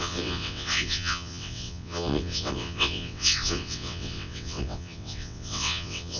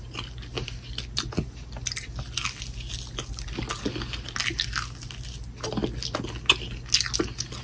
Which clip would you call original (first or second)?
second